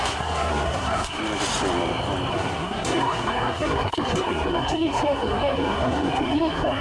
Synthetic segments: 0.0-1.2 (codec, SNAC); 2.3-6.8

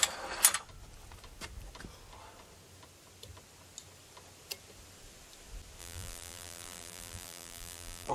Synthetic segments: 5.8-8.1 (vocoder, BigVGAN v2)

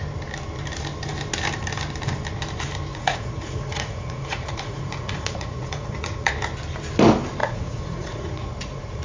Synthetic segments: 2.9-6.3 (vocoder, Vocos); 7.4-9.0

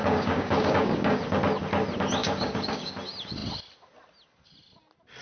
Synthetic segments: 0.0-1.2 (codec, DAC); 2.2-2.9

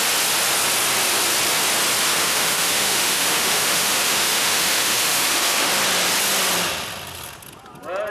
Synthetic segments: 2.1-5.7 (autoencoder, DAC-VAE)

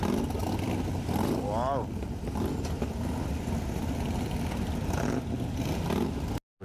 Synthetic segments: none

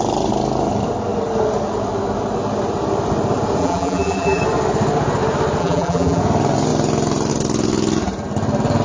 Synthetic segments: 3.6-4.4 (vocoder, BigVGAN v2); 5.6-6.2